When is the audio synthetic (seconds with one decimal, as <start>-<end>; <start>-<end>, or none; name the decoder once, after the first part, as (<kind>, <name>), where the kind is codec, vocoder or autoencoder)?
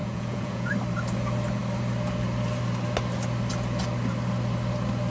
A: 0.0-0.7 (vocoder, Vocos)